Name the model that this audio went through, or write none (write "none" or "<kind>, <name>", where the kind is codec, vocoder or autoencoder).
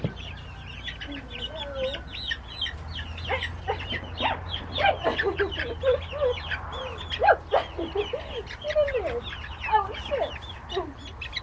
none